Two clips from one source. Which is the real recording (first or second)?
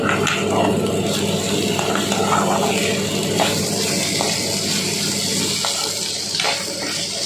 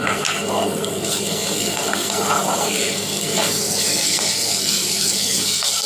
first